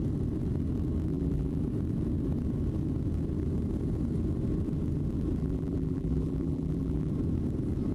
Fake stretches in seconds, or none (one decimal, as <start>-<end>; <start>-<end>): 1.1-1.6; 5.4-7.1